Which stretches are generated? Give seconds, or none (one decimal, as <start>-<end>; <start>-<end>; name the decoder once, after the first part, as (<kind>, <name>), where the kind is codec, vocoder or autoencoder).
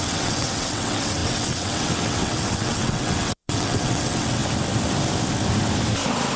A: 0.0-4.4 (vocoder, WaveNeXt)